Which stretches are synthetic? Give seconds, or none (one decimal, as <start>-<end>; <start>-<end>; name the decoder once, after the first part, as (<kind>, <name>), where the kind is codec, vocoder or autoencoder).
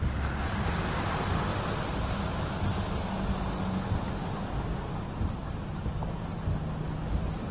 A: none